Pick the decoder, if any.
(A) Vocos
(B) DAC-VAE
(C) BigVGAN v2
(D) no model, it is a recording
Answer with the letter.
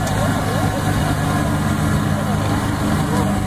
D